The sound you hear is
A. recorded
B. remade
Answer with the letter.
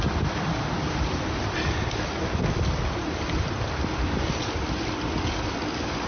A